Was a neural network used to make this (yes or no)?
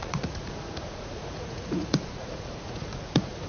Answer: yes